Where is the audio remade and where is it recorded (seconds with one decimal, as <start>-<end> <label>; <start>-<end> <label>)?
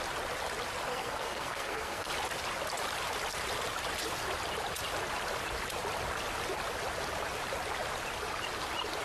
0.0-0.9 recorded; 0.9-2.1 remade; 2.1-9.0 recorded